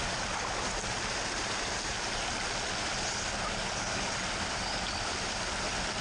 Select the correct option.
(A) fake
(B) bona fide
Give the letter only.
B